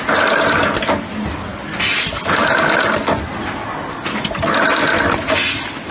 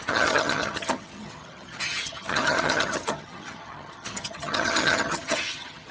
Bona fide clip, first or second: first